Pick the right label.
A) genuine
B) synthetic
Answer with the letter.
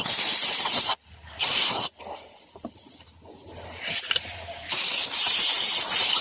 B